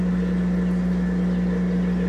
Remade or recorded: recorded